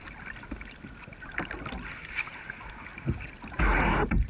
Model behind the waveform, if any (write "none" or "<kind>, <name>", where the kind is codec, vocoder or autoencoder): none